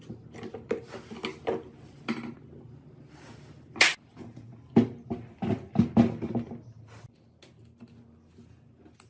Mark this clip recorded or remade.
recorded